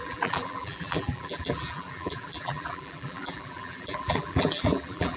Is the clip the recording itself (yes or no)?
no